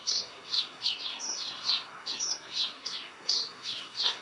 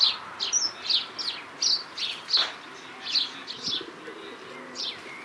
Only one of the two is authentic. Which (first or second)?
second